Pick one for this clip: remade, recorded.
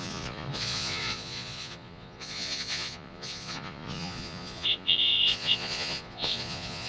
remade